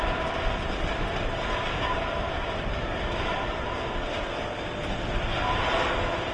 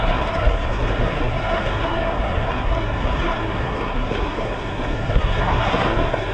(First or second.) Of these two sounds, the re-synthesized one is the second